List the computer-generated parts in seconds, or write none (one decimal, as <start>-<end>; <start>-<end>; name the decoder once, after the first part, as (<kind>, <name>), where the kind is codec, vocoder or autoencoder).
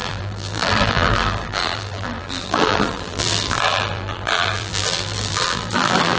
0.0-6.2 (vocoder, BigVGAN v2)